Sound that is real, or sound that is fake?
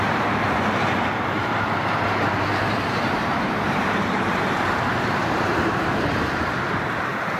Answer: fake